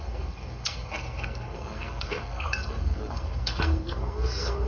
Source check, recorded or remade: remade